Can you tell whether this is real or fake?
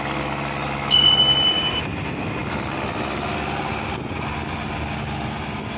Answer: real